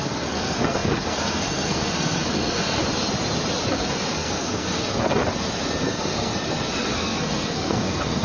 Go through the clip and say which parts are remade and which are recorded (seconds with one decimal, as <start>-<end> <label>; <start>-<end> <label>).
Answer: 0.0-2.8 remade; 2.8-3.7 recorded; 3.7-5.2 remade; 5.2-5.8 recorded; 5.8-6.3 remade; 6.3-6.9 recorded; 6.9-8.2 remade